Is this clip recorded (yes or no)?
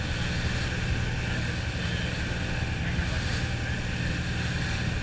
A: yes